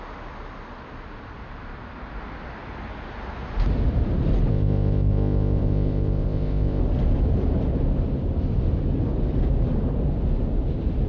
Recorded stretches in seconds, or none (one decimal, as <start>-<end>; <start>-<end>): 0.0-4.5; 6.8-11.1